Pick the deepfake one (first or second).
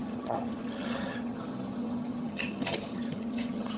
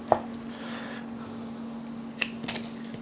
first